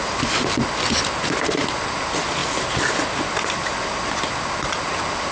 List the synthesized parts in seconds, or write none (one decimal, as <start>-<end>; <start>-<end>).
none